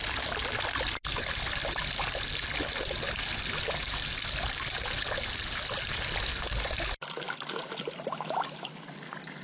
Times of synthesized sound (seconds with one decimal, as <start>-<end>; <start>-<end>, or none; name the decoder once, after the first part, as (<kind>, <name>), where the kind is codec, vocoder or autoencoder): none